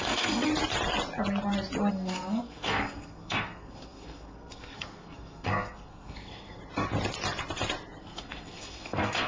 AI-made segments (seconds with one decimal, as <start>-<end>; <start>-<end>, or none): 0.0-0.5; 1.9-6.6; 8.0-9.3